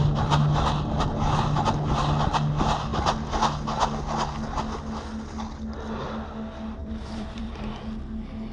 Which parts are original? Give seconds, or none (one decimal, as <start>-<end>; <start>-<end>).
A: 0.0-6.8; 7.7-8.5